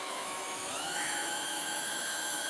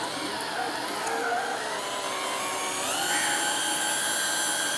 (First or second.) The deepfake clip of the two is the first